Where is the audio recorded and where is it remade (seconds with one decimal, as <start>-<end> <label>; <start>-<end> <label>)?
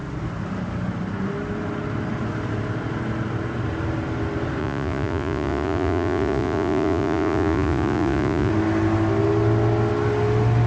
0.0-4.6 recorded; 4.6-8.5 remade; 8.5-10.7 recorded